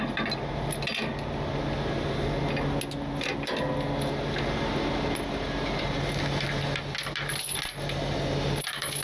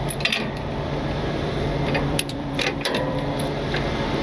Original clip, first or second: first